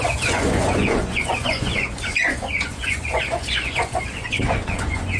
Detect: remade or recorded remade